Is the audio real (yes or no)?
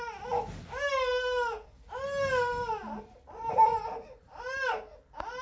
yes